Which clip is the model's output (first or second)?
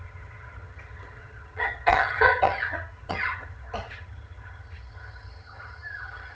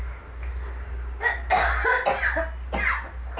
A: first